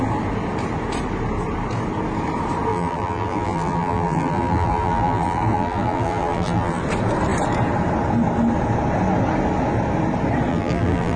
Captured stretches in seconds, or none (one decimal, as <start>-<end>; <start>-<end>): 0.0-2.7; 6.8-10.5